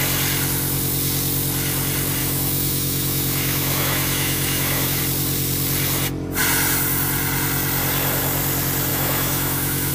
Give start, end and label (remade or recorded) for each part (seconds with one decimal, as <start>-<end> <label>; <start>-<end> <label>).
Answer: 0.0-2.2 recorded; 2.2-5.0 remade; 5.0-8.9 recorded; 8.9-9.9 remade